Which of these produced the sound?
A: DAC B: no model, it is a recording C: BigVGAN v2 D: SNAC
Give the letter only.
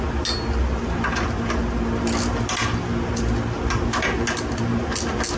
B